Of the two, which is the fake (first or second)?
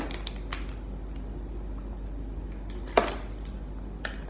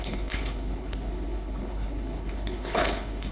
second